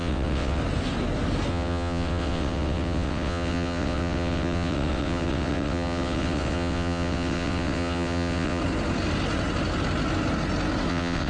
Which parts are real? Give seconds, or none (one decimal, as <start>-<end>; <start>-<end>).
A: 0.6-1.5; 8.6-10.9